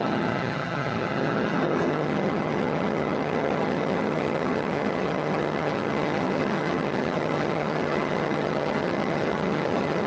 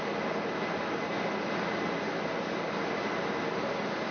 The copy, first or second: first